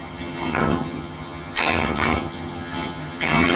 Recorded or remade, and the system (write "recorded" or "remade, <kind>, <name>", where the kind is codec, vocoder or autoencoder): remade, vocoder, HiFi-GAN